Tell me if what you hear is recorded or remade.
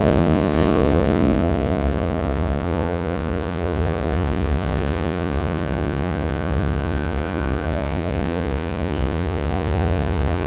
remade